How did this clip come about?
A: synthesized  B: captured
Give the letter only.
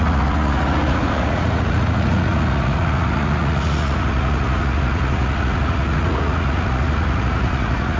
A